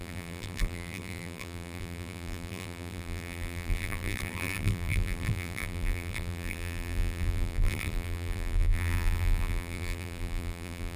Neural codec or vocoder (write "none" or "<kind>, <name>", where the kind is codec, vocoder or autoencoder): vocoder, BigVGAN v2